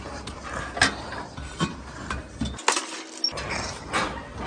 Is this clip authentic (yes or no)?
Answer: yes